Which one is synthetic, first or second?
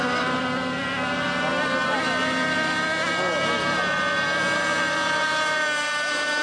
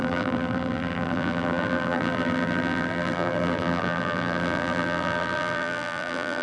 second